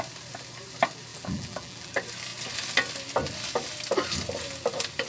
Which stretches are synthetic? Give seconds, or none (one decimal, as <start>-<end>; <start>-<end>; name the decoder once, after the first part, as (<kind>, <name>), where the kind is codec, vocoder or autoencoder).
1.1-1.9 (vocoder, BigVGAN v2)